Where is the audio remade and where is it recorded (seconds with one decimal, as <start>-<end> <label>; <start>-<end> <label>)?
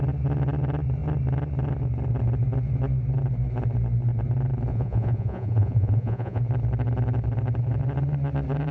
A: 0.0-4.7 recorded; 4.7-6.4 remade; 6.4-8.7 recorded